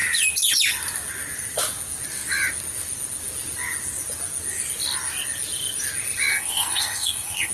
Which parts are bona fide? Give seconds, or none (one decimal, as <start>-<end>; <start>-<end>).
0.0-6.3